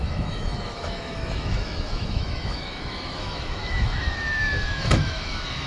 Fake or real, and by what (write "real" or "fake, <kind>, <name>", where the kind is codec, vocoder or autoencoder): fake, autoencoder, DAC-VAE